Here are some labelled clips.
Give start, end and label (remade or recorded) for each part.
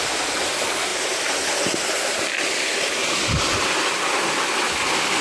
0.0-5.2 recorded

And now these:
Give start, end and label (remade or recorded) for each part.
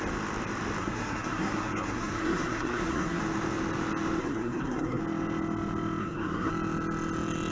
0.0-0.8 recorded; 0.8-3.2 remade; 3.2-4.2 recorded; 4.2-5.0 remade; 5.0-6.0 recorded; 6.0-6.5 remade; 6.5-7.5 recorded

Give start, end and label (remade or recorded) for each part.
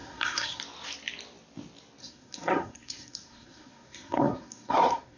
0.0-0.6 remade; 0.6-2.0 recorded; 2.0-5.2 remade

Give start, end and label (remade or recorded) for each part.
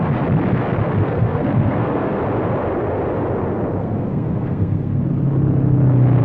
0.0-1.0 recorded; 1.0-2.2 remade; 2.2-3.8 recorded; 3.8-5.0 remade; 5.0-6.2 recorded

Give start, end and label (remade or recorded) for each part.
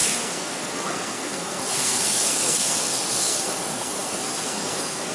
0.0-5.1 remade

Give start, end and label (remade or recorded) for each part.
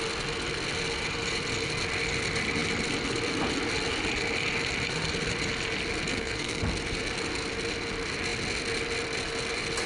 0.0-6.1 recorded; 6.1-6.6 remade; 6.6-9.9 recorded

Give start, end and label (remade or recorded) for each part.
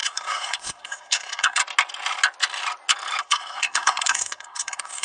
0.0-1.6 remade; 1.6-3.2 recorded; 3.2-5.0 remade